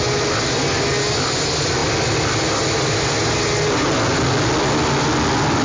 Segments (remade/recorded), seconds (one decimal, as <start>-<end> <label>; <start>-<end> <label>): 0.0-5.6 recorded